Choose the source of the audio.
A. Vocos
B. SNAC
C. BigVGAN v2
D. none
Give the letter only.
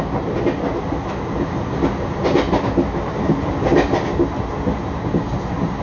D